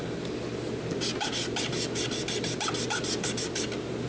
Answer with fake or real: real